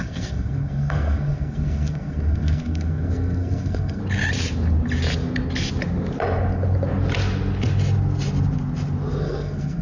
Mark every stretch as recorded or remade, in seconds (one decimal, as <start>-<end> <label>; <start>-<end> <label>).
0.0-4.0 remade; 4.0-9.2 recorded; 9.2-9.8 remade